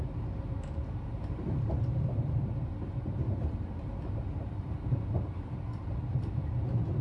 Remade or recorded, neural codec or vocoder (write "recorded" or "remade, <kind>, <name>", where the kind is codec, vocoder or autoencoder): remade, vocoder, BigVGAN v2